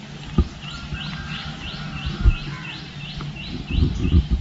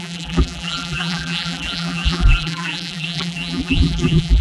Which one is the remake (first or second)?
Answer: second